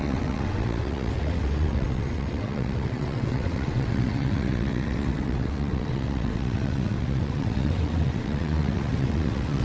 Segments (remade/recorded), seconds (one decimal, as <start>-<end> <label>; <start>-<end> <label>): 0.0-9.6 remade